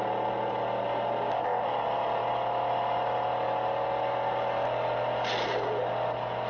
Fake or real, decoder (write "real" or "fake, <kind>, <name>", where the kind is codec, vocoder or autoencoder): real